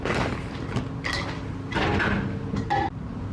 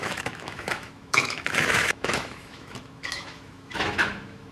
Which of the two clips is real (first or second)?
first